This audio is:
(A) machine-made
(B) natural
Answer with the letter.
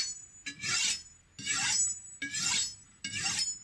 B